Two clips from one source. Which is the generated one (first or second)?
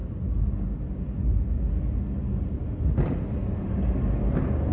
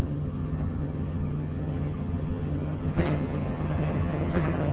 second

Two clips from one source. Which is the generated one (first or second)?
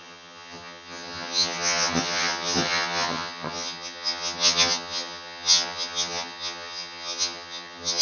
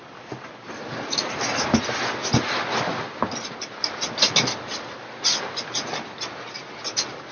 first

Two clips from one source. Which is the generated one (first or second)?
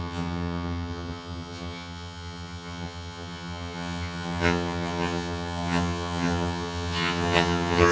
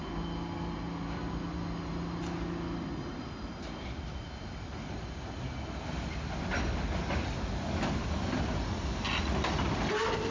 first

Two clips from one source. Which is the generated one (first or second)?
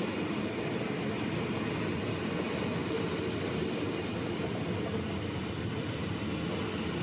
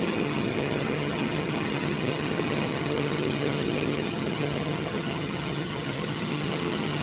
second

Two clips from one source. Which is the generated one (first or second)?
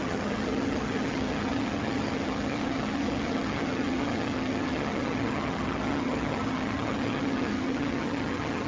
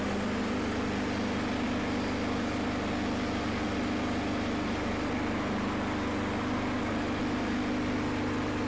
first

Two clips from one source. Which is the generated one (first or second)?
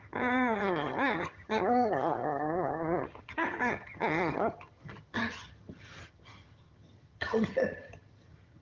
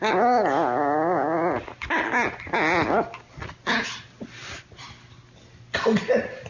first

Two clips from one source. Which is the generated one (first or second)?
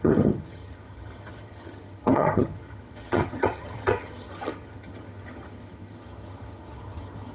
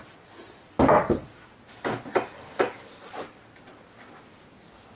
first